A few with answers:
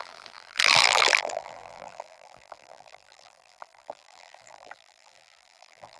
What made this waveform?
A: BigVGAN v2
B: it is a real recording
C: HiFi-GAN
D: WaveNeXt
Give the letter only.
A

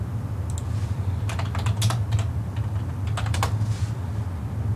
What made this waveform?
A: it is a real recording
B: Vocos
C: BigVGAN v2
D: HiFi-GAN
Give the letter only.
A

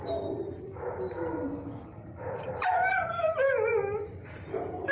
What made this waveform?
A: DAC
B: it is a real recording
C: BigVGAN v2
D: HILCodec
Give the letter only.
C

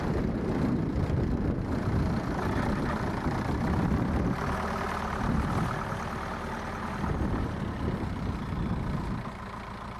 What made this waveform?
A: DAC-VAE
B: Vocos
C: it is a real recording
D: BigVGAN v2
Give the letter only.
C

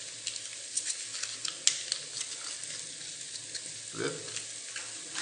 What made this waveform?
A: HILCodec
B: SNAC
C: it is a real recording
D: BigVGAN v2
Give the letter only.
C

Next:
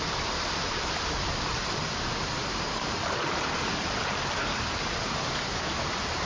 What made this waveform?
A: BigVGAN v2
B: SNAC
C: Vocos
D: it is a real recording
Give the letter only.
A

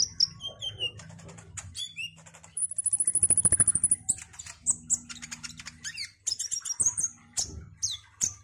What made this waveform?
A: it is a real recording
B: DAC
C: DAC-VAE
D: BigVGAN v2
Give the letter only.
D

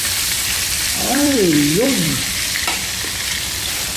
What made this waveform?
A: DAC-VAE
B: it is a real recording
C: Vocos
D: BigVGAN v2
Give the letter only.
D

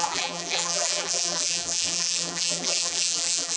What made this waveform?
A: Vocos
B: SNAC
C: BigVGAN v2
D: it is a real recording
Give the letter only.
C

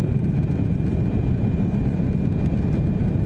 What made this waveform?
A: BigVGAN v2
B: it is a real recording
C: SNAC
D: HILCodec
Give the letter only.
A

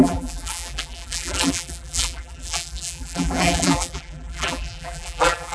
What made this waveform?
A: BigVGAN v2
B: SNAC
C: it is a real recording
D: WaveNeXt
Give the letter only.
A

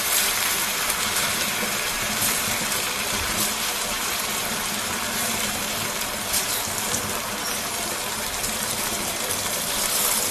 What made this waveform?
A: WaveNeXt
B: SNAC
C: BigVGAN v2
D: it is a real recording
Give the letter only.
C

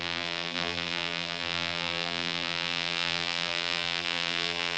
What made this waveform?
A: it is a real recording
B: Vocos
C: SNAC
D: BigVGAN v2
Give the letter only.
D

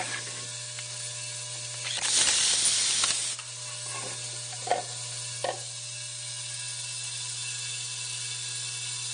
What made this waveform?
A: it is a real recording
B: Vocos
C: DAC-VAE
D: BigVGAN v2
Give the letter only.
A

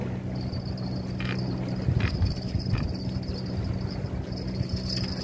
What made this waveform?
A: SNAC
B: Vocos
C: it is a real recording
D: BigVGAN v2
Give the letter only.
C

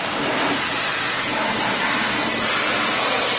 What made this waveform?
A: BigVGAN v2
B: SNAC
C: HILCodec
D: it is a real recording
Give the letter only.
D